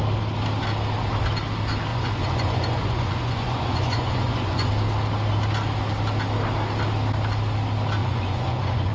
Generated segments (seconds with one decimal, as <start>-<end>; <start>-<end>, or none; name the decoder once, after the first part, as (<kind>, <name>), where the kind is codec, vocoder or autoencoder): 1.9-4.7 (vocoder, Vocos); 8.0-8.9

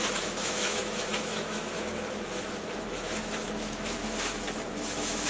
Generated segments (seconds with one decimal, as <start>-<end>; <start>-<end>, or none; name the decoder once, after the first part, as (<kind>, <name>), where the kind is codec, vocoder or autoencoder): 0.0-5.3 (autoencoder, DAC-VAE)